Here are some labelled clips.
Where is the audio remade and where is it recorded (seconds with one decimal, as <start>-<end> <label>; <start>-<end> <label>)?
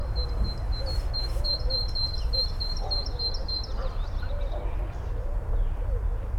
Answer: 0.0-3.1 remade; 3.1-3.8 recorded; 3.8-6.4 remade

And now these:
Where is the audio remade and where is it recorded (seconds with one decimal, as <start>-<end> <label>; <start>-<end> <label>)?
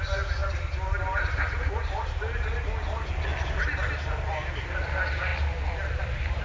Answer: 0.0-6.4 recorded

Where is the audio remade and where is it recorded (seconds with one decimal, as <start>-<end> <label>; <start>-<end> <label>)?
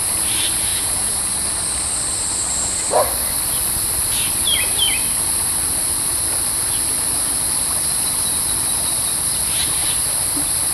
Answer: 0.0-0.7 recorded; 0.7-1.3 remade; 1.3-10.7 recorded